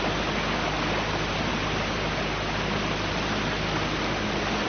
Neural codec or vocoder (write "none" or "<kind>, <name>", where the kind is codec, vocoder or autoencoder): none